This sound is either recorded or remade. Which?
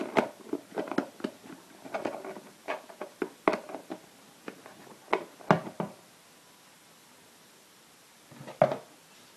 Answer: recorded